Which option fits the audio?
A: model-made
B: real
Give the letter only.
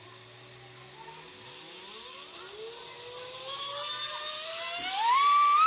B